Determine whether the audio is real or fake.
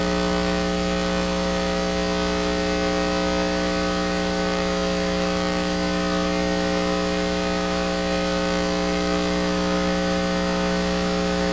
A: fake